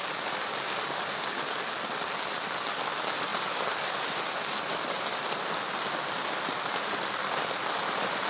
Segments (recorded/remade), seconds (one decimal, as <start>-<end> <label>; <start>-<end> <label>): 0.0-8.3 recorded